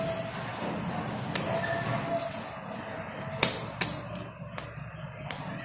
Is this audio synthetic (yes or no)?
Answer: no